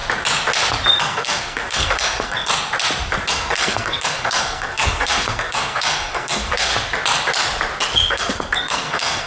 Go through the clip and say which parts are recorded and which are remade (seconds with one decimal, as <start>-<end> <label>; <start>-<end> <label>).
0.0-1.0 recorded; 1.0-2.5 remade; 2.5-3.3 recorded; 3.3-6.7 remade; 6.7-8.1 recorded; 8.1-9.3 remade